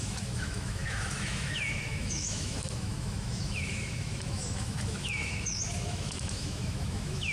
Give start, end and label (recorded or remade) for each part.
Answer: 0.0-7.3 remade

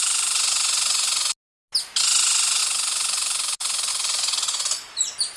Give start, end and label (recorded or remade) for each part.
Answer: 0.0-5.4 recorded

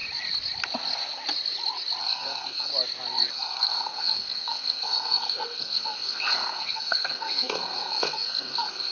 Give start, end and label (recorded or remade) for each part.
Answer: 0.0-2.0 recorded; 2.0-2.7 remade; 2.7-3.3 recorded; 3.3-8.9 remade

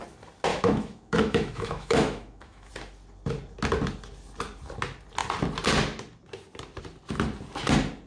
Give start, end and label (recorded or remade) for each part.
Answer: 0.0-0.5 recorded; 0.5-2.7 remade; 2.7-8.1 recorded

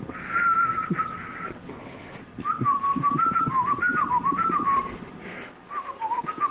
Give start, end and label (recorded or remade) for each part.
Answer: 0.0-1.7 recorded; 1.7-2.2 remade; 2.2-6.5 recorded